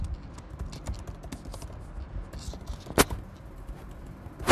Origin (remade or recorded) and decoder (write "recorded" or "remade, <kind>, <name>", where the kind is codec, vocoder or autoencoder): recorded